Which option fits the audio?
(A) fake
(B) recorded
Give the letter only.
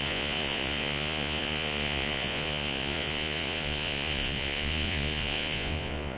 A